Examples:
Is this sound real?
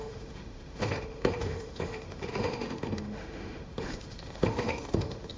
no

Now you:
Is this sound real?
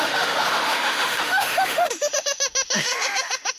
no